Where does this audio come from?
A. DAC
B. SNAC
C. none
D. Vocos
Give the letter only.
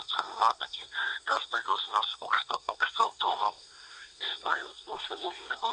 B